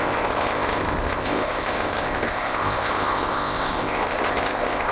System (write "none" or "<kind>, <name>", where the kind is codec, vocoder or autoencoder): codec, ZipCodec